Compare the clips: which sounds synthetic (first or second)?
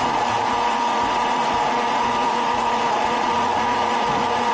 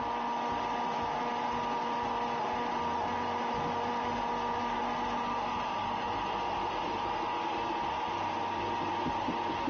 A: first